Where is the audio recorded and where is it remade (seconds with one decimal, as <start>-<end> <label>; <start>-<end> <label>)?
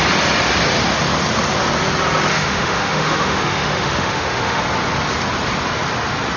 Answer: 0.0-2.3 recorded; 2.3-4.6 remade; 4.6-6.4 recorded